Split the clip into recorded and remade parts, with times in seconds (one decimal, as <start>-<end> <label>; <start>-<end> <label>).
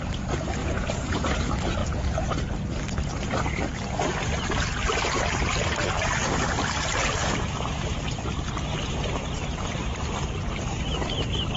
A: 0.0-0.6 recorded; 0.6-1.4 remade; 1.4-11.6 recorded